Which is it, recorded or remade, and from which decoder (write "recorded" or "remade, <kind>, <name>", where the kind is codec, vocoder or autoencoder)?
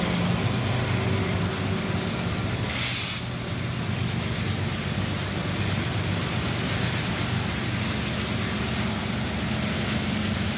recorded